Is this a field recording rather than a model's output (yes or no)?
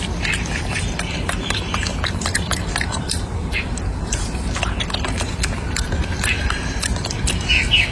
no